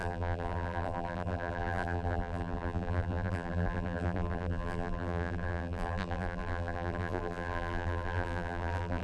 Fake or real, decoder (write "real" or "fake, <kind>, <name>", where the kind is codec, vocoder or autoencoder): fake, vocoder, BigVGAN v2